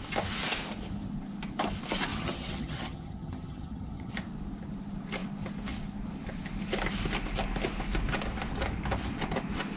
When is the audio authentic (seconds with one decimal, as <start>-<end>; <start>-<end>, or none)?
0.0-2.1; 4.1-9.8